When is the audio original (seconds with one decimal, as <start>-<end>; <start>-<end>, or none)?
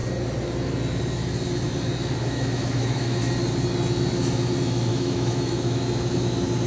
0.0-2.2; 3.3-4.9; 5.8-6.7